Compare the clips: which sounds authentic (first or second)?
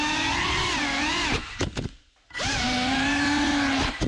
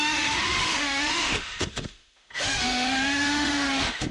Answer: first